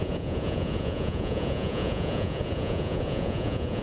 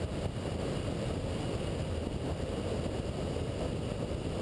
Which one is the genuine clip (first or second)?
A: second